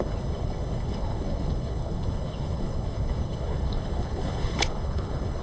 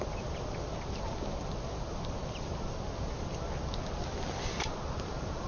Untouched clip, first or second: second